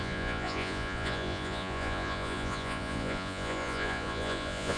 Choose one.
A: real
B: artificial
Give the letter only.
B